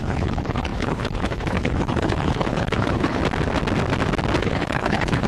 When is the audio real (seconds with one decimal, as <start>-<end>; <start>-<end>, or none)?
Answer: 3.2-4.4